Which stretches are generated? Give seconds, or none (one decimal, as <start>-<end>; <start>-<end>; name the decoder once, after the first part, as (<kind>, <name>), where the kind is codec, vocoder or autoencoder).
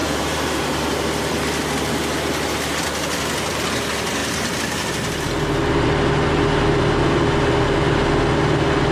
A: 0.0-2.0 (vocoder, BigVGAN v2); 4.2-5.3